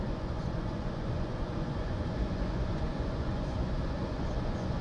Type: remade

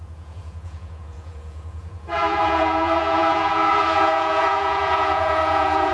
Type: remade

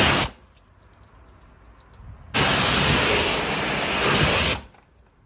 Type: recorded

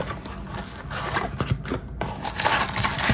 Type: recorded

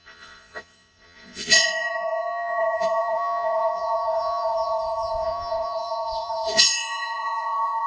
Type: remade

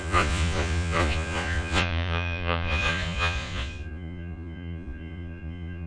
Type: remade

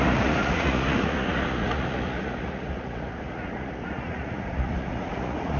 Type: remade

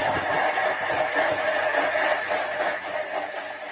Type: recorded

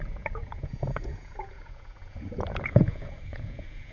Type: remade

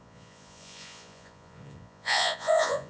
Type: remade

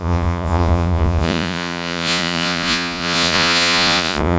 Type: remade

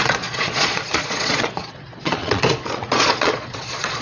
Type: remade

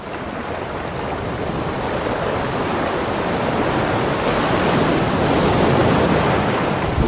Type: recorded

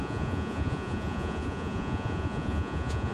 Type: remade